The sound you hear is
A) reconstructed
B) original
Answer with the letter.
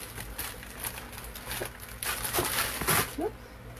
B